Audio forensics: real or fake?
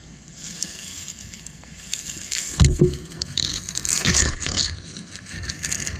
fake